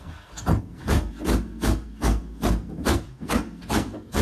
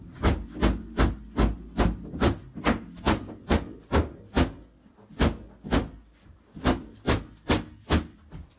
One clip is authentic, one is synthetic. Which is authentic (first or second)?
second